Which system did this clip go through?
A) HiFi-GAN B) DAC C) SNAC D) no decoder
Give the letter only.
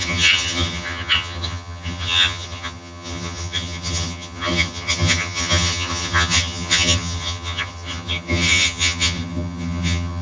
A